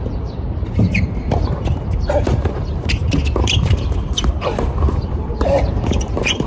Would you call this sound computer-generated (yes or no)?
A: yes